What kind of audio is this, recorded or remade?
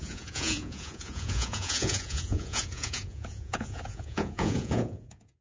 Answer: remade